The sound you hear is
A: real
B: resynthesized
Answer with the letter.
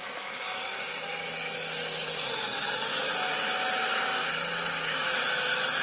B